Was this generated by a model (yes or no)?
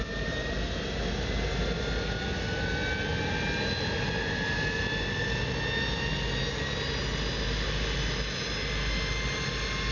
no